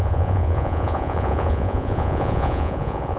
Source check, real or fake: fake